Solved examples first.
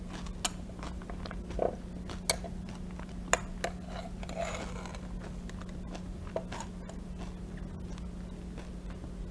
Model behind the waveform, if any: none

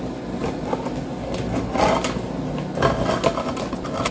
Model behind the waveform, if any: none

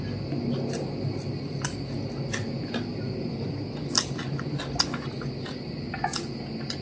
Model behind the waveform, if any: none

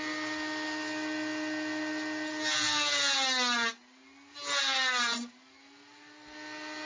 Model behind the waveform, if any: none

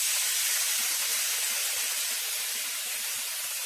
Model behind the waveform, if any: none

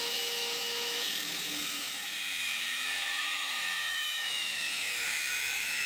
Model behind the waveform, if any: autoencoder, DAC-VAE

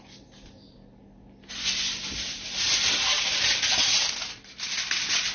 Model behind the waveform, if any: none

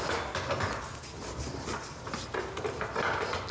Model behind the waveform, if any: none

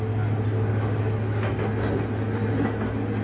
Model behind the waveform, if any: none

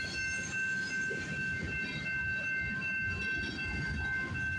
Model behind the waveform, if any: none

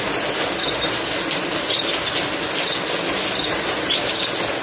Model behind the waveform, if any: none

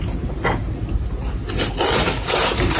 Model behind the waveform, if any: none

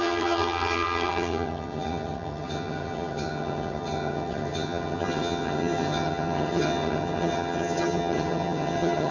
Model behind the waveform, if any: vocoder, HiFi-GAN